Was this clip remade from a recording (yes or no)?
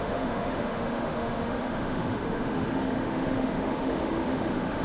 yes